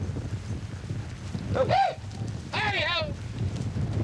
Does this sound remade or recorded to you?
recorded